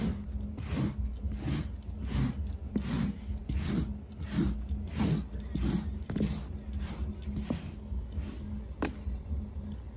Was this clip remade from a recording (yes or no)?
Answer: no